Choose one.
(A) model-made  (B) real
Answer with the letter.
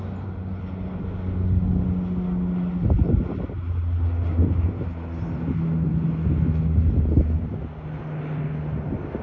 B